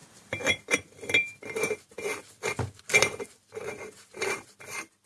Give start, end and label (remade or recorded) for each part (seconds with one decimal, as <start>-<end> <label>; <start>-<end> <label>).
0.0-2.2 remade; 2.2-3.1 recorded; 3.1-5.1 remade